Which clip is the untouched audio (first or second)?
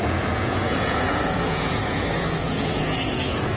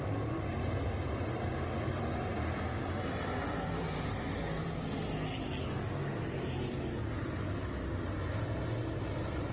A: second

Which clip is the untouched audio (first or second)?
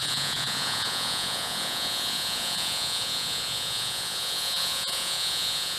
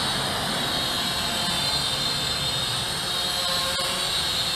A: second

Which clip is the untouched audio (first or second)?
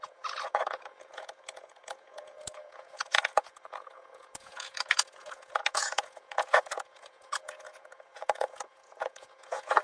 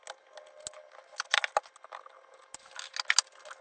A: second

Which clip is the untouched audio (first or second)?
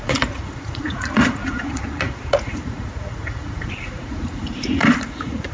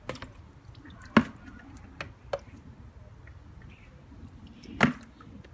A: second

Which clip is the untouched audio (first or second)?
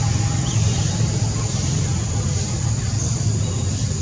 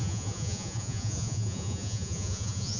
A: first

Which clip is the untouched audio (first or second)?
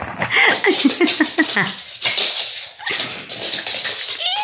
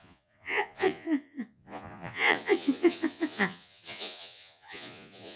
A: first